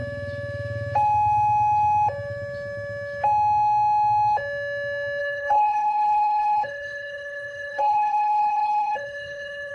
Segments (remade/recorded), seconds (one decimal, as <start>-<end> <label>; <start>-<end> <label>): 0.0-5.2 recorded; 5.2-9.7 remade